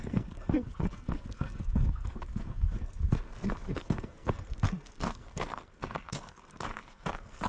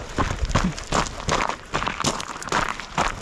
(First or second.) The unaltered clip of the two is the second